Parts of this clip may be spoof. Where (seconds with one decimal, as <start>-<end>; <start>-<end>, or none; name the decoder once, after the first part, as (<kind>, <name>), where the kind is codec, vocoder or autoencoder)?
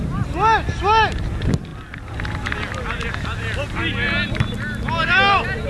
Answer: none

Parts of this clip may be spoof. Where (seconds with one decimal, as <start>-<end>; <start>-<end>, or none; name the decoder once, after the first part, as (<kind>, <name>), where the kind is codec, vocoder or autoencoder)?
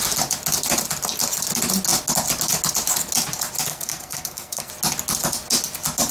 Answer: 3.7-4.7 (codec, SNAC)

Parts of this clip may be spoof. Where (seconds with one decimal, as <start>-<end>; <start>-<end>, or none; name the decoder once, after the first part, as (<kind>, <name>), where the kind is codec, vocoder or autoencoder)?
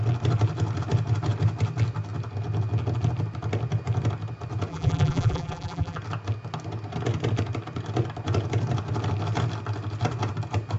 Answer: 4.7-6.0 (vocoder, BigVGAN v2)